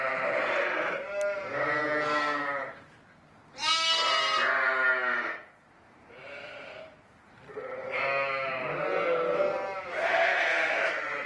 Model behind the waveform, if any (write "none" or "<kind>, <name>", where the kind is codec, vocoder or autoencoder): none